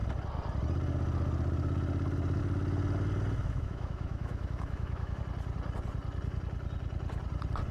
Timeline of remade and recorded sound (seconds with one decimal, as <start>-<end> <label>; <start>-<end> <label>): 0.0-3.4 recorded; 3.4-5.2 remade; 5.2-7.7 recorded